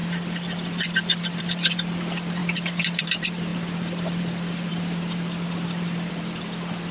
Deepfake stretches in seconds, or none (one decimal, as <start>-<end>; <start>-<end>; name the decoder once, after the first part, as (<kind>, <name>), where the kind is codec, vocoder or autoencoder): 0.0-2.4 (vocoder, BigVGAN v2); 3.0-6.9